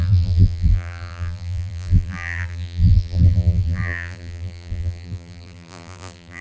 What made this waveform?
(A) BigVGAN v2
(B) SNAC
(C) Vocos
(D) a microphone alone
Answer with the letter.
A